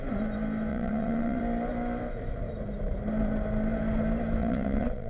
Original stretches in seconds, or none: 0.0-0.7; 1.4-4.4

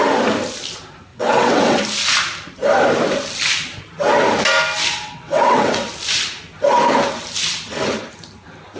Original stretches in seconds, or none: 0.0-1.1; 1.8-4.9; 5.9-8.8

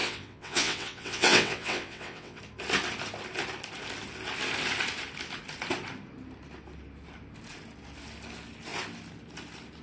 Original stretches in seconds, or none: 2.4-9.8

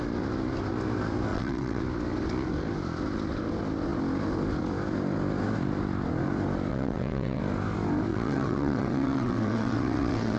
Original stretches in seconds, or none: 0.0-1.3; 1.8-6.7; 7.4-8.1

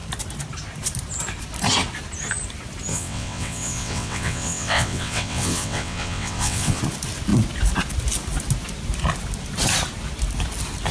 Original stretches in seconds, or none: 0.0-2.9; 6.8-10.9